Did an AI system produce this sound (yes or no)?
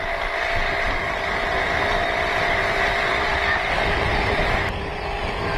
yes